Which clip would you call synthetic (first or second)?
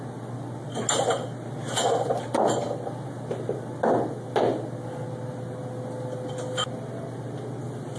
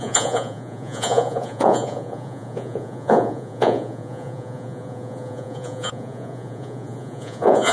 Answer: second